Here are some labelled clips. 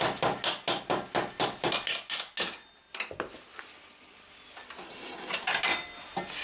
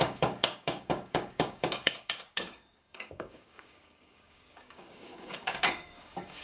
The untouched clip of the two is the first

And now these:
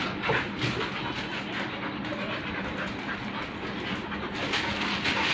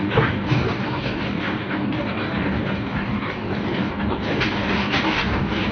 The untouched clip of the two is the first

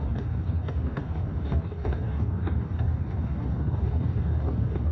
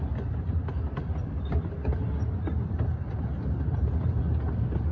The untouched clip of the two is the second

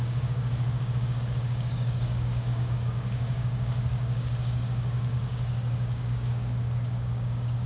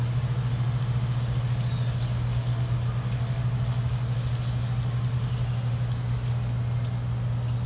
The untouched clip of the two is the second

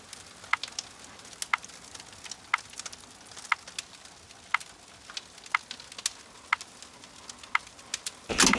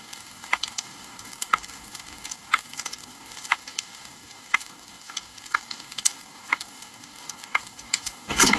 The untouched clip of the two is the first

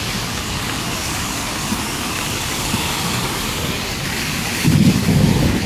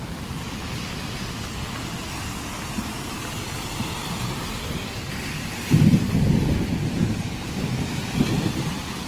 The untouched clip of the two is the second